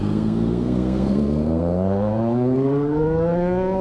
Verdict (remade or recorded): remade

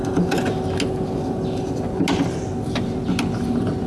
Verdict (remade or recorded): recorded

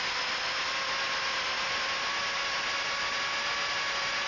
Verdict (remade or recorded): recorded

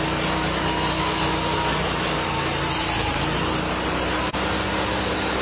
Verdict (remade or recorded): recorded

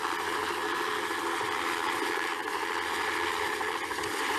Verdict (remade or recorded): recorded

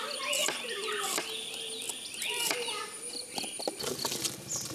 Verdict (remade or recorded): recorded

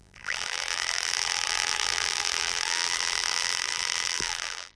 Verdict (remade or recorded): remade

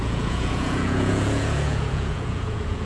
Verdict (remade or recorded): remade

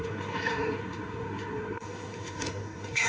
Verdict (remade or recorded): remade